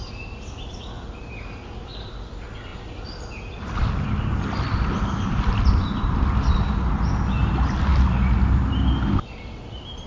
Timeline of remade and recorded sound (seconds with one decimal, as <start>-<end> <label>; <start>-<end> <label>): 0.0-10.1 recorded